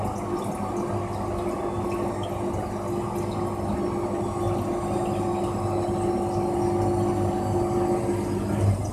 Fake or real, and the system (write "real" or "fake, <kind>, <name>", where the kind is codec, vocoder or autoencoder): real